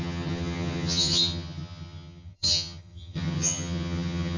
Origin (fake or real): fake